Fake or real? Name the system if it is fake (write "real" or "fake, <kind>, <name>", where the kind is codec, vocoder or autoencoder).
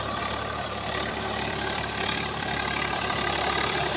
fake, vocoder, BigVGAN v2